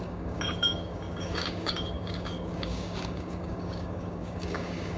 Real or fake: fake